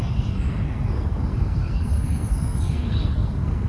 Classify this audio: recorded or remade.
remade